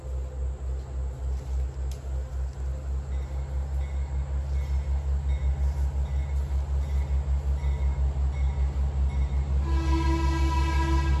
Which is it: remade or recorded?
recorded